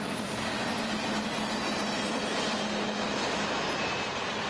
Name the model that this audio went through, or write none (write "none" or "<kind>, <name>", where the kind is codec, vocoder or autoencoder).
none